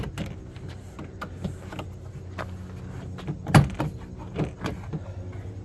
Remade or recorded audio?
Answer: recorded